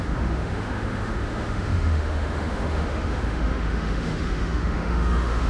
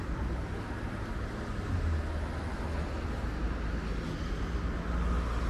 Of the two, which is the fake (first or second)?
first